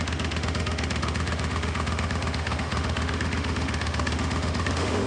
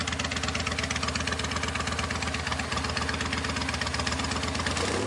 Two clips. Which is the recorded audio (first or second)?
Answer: second